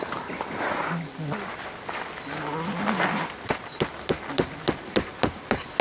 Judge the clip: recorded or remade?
recorded